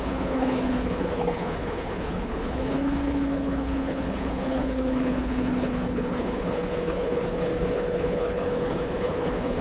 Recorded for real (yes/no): no